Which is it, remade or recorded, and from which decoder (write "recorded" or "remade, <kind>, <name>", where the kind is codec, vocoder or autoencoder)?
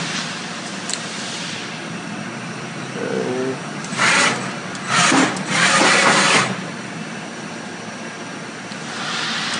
recorded